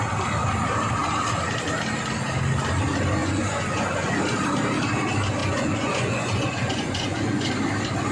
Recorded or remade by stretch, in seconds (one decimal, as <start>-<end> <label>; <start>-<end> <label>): 0.0-3.2 recorded; 3.2-4.2 remade; 4.2-5.4 recorded; 5.4-7.5 remade; 7.5-8.1 recorded